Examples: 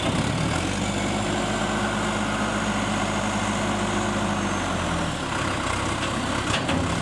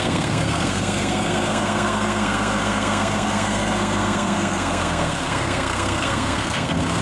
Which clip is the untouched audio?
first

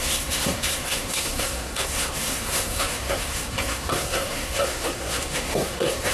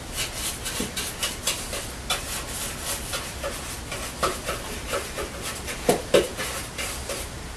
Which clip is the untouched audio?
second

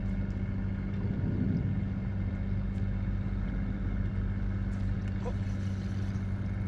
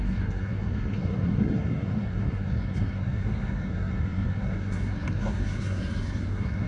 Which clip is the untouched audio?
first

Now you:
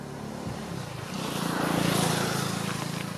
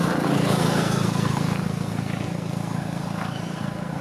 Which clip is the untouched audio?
first